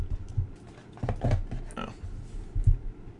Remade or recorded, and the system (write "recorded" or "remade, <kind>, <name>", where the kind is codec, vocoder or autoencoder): recorded